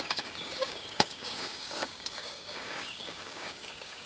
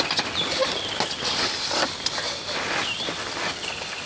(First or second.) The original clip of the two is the second